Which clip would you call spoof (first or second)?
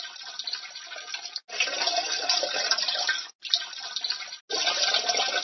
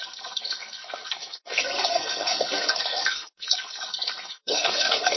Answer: second